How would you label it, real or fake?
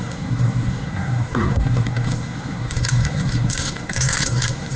fake